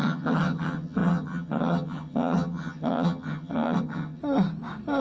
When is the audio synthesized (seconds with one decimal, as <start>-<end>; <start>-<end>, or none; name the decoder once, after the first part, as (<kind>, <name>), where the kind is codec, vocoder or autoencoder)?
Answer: 0.0-4.2 (vocoder, HiFi-GAN)